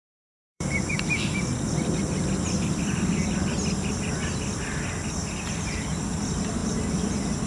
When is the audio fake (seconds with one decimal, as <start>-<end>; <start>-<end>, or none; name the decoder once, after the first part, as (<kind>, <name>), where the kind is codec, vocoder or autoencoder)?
0.0-0.9 (vocoder, BigVGAN v2); 5.2-6.0